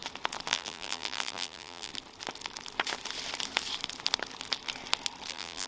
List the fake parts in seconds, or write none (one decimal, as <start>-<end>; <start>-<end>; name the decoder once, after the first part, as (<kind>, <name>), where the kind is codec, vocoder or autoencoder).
0.5-1.9 (vocoder, BigVGAN v2); 5.3-5.7